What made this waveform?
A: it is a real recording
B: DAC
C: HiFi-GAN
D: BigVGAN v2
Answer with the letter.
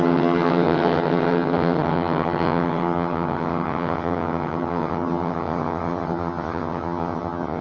C